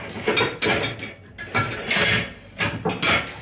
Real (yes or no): yes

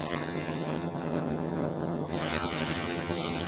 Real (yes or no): no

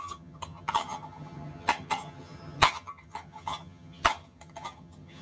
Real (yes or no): no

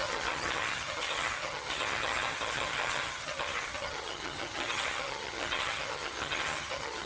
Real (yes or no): no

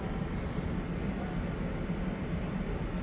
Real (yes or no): yes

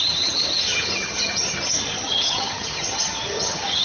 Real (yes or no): no